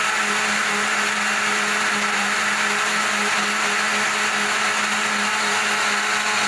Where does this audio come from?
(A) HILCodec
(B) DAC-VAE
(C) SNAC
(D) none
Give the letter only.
D